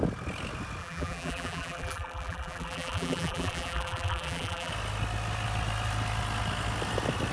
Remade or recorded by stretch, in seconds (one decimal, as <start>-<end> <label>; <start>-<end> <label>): 0.0-0.8 recorded; 0.8-4.7 remade; 4.7-7.3 recorded